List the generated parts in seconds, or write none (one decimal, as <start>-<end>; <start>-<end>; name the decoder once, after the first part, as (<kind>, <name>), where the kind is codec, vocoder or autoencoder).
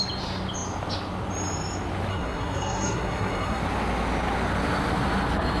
2.1-3.6 (codec, SNAC)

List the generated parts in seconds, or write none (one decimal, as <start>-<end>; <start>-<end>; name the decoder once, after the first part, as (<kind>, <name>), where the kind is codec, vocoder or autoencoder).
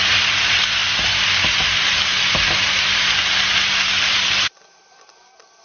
none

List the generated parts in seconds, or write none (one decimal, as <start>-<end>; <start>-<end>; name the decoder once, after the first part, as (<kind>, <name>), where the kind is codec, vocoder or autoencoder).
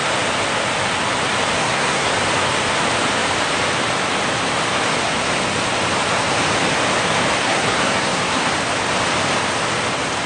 1.6-2.1 (codec, SNAC); 7.4-8.5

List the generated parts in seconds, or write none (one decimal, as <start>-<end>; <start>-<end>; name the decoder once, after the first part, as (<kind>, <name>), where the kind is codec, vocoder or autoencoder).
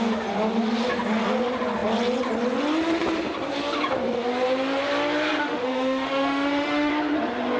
5.4-6.9 (autoencoder, DAC-VAE)